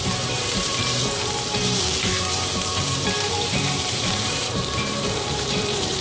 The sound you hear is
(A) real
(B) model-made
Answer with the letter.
B